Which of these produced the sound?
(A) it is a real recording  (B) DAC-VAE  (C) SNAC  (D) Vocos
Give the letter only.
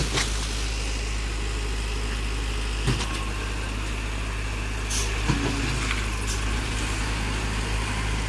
A